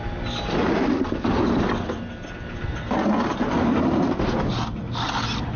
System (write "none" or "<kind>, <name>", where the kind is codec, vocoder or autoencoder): none